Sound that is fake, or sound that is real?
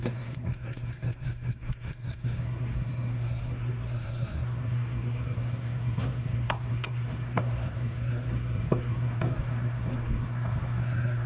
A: fake